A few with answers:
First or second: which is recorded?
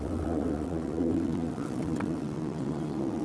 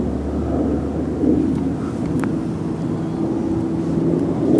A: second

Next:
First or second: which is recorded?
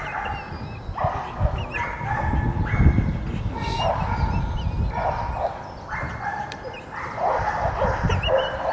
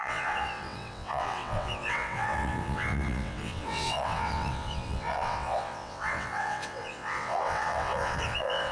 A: first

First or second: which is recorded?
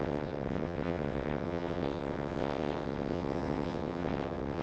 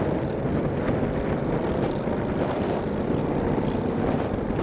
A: second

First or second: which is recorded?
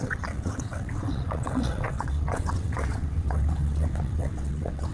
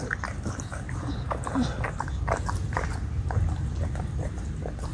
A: second